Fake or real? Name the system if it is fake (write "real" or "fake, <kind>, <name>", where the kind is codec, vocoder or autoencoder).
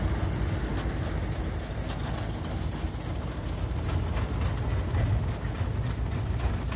real